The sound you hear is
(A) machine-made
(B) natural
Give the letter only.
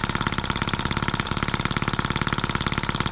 B